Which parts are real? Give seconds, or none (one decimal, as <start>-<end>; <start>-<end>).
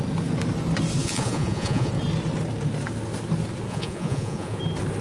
0.0-1.0; 1.9-3.7; 4.6-5.0